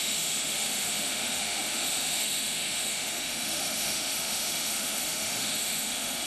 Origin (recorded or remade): remade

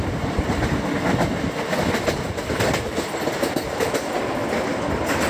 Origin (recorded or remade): recorded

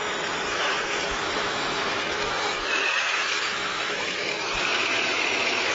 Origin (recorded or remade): remade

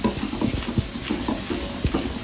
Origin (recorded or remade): recorded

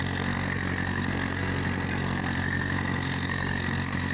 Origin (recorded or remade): remade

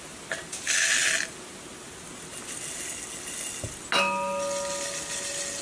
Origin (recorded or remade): recorded